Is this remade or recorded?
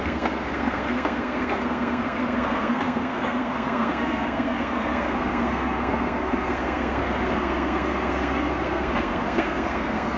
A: remade